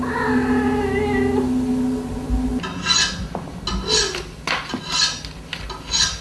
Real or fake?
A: real